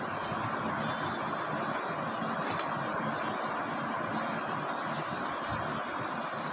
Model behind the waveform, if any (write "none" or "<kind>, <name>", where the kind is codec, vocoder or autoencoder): none